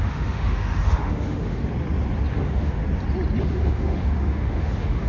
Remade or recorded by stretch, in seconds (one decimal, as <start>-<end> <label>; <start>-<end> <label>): 0.0-1.6 remade; 1.6-2.3 recorded; 2.3-2.8 remade; 2.8-3.4 recorded; 3.4-5.1 remade